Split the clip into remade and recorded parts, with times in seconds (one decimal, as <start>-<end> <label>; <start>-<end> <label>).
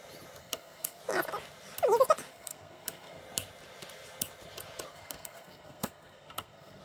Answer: 0.0-0.4 recorded; 0.4-1.0 remade; 1.0-2.3 recorded; 2.3-3.2 remade; 3.2-4.9 recorded; 4.9-6.8 remade